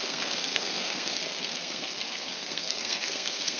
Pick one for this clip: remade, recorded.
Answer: remade